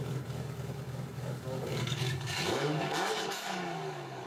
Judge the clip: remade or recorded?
remade